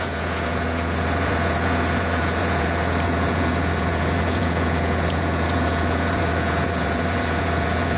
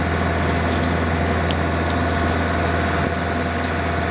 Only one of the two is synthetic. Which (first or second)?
first